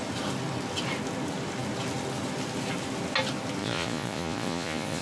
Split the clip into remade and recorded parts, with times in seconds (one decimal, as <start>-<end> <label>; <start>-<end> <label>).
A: 0.0-3.6 recorded; 3.6-5.0 remade